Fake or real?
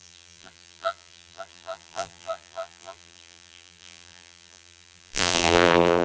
fake